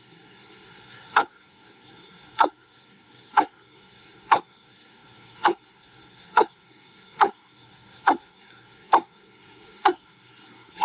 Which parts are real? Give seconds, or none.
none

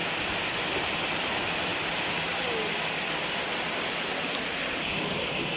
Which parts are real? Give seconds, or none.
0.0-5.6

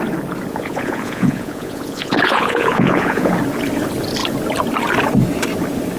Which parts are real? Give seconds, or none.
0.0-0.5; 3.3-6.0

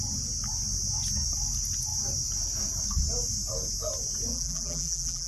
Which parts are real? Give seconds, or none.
0.0-4.3

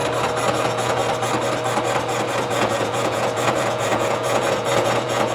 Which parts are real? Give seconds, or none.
0.0-0.5; 1.0-2.4

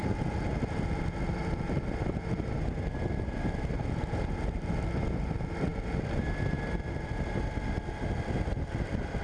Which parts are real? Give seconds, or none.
0.0-9.2